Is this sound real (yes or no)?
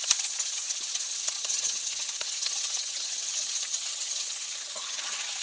no